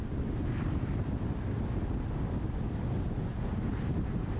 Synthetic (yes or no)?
no